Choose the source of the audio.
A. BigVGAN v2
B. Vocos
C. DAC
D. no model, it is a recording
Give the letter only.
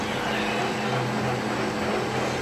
D